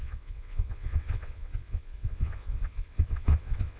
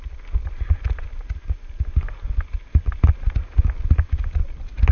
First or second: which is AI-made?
first